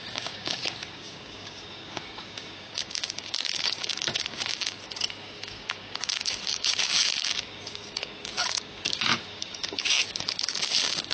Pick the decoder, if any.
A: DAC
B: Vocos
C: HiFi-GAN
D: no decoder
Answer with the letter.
A